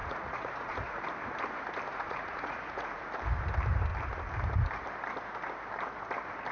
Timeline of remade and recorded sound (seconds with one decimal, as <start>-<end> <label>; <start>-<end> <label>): 0.0-1.0 remade; 1.0-1.9 recorded; 1.9-3.1 remade; 3.1-6.5 recorded